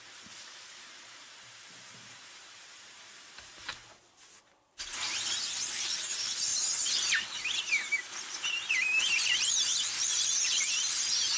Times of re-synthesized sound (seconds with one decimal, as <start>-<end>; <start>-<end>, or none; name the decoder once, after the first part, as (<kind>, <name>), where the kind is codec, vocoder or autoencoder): 0.0-3.7 (vocoder, BigVGAN v2); 5.4-11.4